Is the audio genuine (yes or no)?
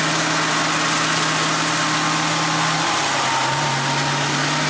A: yes